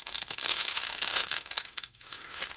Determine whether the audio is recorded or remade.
remade